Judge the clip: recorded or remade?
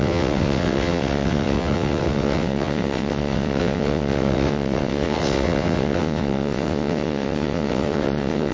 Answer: remade